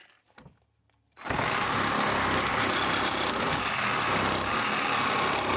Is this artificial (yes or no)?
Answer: yes